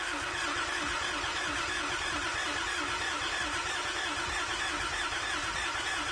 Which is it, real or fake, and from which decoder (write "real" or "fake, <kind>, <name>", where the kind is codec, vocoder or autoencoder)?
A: real